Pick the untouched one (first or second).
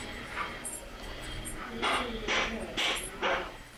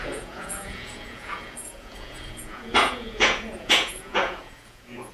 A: first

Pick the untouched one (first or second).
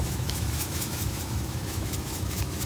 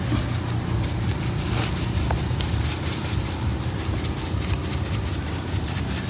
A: second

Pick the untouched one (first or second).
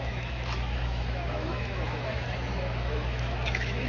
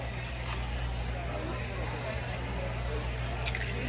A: second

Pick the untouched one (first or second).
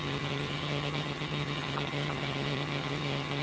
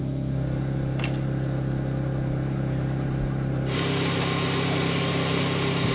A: second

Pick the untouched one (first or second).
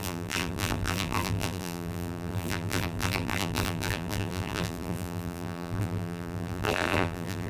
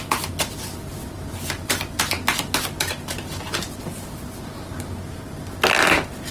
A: second